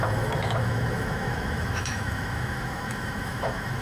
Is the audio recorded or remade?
remade